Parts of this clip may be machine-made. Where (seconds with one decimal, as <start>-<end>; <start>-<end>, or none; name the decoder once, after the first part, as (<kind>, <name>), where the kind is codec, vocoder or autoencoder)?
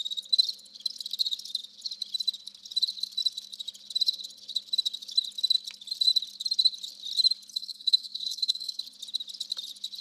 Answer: 7.5-8.8 (codec, SNAC)